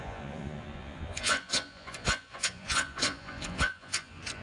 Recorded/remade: remade